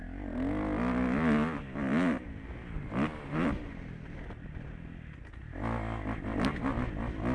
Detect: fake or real real